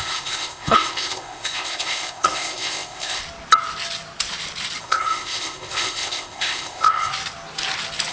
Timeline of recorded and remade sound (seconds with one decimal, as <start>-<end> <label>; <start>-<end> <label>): 0.0-3.2 remade; 3.2-4.8 recorded; 4.8-7.1 remade; 7.1-8.1 recorded